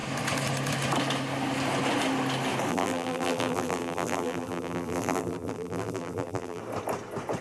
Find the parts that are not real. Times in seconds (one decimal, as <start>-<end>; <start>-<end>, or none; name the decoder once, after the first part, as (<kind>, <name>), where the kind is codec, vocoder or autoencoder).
2.7-6.6 (vocoder, BigVGAN v2)